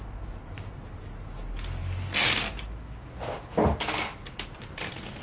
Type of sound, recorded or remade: recorded